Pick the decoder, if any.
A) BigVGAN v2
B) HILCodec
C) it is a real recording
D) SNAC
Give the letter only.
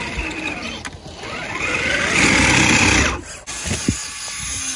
C